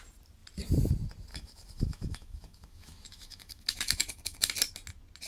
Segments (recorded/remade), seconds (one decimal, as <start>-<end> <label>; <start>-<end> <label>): 0.0-1.3 recorded; 1.3-4.5 remade; 4.5-5.3 recorded